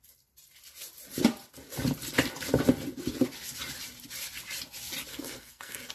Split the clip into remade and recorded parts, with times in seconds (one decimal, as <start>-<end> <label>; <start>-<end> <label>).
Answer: 0.0-5.1 recorded; 5.1-5.9 remade